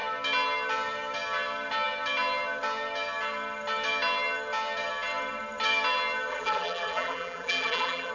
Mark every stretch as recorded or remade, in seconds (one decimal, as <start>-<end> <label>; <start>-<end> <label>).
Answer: 0.0-6.3 recorded; 6.3-8.1 remade